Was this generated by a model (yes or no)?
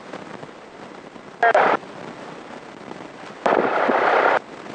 no